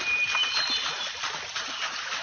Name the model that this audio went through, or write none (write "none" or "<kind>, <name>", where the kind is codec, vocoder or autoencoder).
none